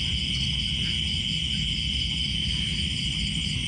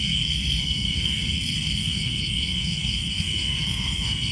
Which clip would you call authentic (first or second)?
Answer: first